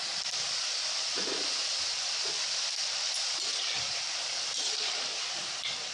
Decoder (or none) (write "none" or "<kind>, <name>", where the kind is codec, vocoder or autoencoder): vocoder, BigVGAN v2